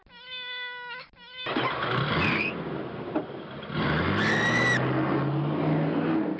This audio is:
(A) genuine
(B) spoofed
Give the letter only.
A